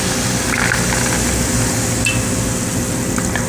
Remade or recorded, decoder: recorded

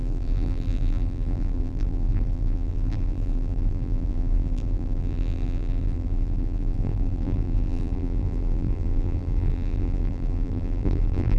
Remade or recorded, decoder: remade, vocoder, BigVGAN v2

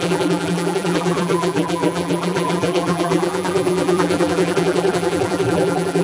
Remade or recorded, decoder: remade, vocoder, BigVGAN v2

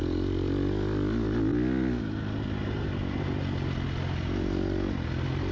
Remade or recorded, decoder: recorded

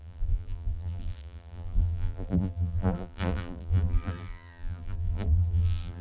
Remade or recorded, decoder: remade, vocoder, BigVGAN v2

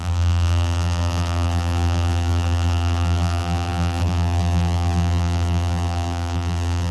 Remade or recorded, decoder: remade, vocoder, BigVGAN v2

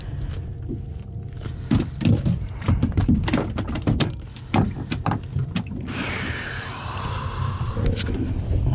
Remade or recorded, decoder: remade, vocoder, BigVGAN v2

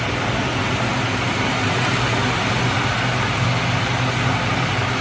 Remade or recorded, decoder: recorded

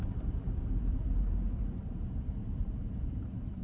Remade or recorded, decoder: remade, vocoder, BigVGAN v2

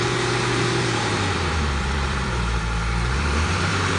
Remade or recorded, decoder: remade, vocoder, BigVGAN v2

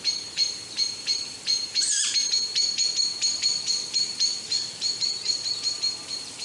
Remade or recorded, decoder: remade, vocoder, BigVGAN v2